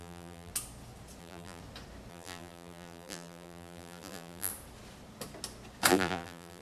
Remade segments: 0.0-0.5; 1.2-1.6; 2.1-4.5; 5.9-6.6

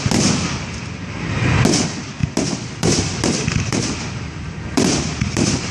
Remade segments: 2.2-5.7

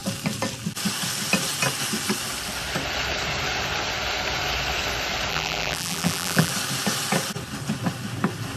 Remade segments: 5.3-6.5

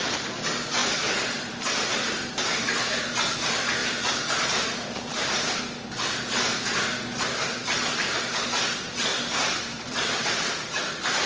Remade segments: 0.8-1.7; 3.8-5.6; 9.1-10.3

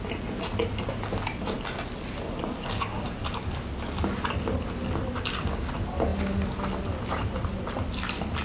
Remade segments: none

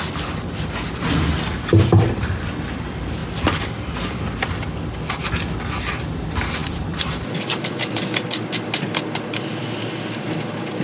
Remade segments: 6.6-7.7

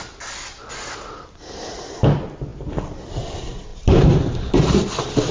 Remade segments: 3.7-4.6

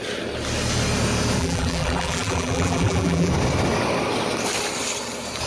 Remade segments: 1.4-3.3